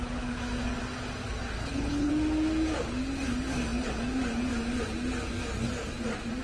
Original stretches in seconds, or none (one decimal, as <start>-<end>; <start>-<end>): 0.0-1.6; 2.1-6.4